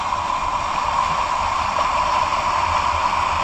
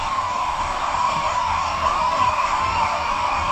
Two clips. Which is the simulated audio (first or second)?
second